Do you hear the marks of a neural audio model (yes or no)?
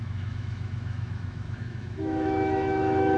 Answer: yes